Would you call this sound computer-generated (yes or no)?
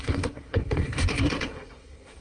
yes